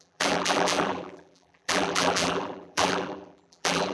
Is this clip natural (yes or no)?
no